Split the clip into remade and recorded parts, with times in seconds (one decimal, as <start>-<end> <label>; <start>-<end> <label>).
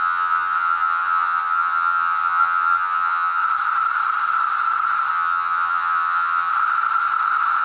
0.0-3.4 remade; 3.4-5.1 recorded; 5.1-6.5 remade; 6.5-7.6 recorded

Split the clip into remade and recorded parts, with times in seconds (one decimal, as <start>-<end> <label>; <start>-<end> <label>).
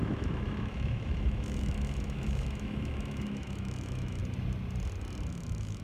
0.0-4.2 remade; 4.2-5.3 recorded; 5.3-5.8 remade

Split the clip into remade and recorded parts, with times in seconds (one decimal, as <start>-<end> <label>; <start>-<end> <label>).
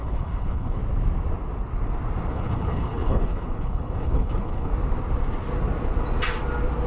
0.0-0.8 remade; 0.8-2.3 recorded; 2.3-4.7 remade; 4.7-6.9 recorded